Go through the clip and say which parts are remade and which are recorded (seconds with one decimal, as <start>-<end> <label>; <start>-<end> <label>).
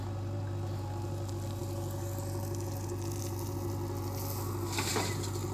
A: 0.0-5.5 recorded